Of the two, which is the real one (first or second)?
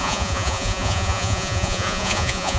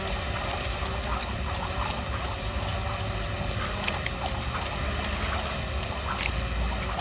second